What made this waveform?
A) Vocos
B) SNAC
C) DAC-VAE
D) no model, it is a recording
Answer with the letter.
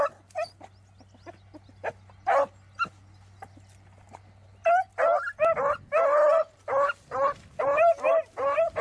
D